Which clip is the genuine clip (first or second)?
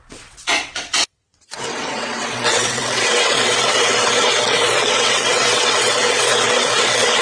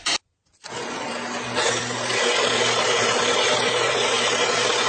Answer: second